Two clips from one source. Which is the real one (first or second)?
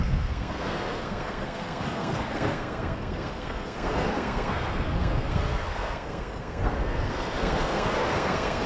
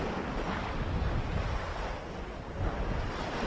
second